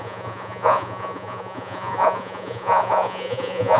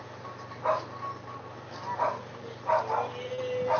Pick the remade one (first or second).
first